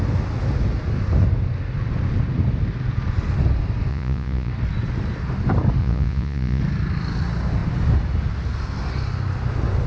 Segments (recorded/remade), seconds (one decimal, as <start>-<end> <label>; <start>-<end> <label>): 0.0-3.9 recorded; 3.9-4.5 remade; 4.5-5.8 recorded; 5.8-6.6 remade; 6.6-9.9 recorded